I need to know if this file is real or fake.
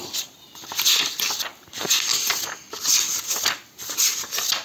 real